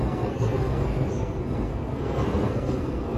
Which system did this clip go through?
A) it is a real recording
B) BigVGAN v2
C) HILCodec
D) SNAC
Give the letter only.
D